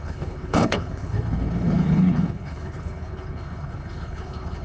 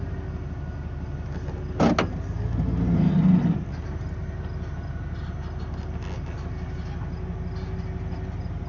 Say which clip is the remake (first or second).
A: first